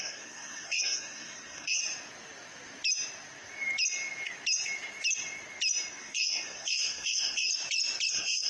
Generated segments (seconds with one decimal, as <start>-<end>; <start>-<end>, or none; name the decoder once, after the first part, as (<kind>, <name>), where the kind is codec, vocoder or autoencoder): 0.0-1.8 (codec, SNAC); 6.0-7.5; 8.1-8.5